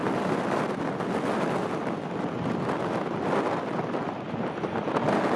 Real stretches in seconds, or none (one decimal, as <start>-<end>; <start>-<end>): 0.0-5.4

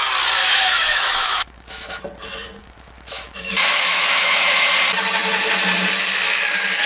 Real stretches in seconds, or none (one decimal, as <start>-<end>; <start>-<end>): 0.0-0.4; 2.0-2.6; 4.7-6.9

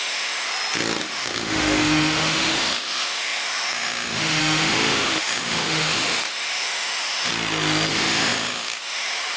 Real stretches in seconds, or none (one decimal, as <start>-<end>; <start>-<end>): 0.5-1.0; 7.3-7.9